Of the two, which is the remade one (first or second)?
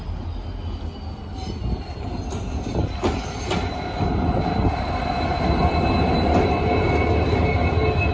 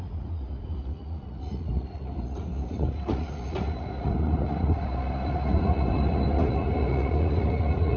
second